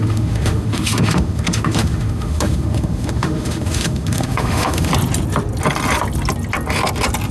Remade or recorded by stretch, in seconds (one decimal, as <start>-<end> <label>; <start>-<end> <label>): 0.0-4.9 remade; 4.9-7.3 recorded